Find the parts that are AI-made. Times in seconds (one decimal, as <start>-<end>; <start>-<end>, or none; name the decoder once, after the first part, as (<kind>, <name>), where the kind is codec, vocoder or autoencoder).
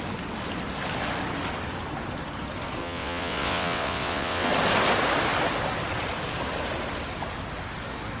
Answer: 2.8-4.5 (vocoder, WaveNeXt)